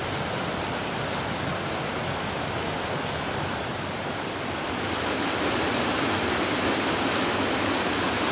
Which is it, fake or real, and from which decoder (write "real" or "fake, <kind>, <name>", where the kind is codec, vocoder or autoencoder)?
fake, vocoder, BigVGAN v2